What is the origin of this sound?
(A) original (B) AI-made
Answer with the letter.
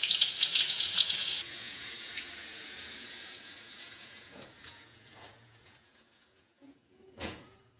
B